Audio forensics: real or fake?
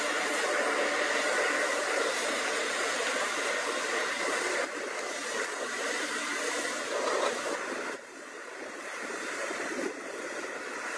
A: real